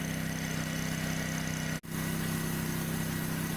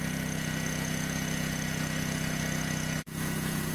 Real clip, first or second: first